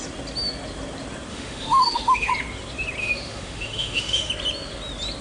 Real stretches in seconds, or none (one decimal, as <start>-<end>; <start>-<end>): 0.0-1.3; 2.3-3.0; 4.3-5.2

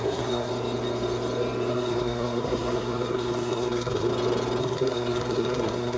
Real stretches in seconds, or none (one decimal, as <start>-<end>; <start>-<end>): 0.5-1.7; 4.1-4.6

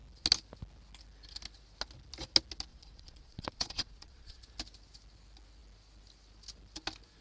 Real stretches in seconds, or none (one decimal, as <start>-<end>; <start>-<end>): 0.0-2.7; 4.4-7.2

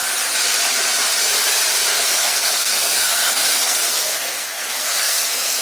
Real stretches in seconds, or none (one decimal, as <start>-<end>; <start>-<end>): 0.0-1.9